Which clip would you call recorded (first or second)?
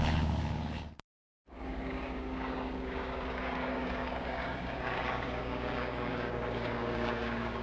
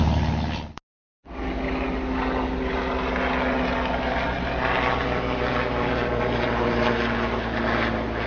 second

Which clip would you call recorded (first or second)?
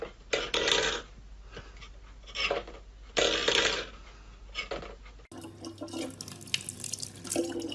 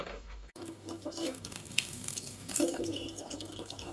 first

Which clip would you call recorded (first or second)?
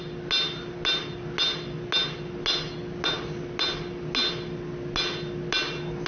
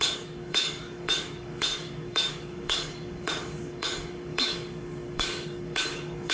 first